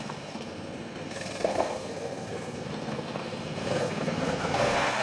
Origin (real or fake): fake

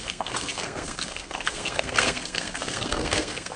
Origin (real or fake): fake